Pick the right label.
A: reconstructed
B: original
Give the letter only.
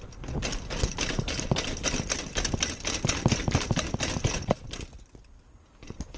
B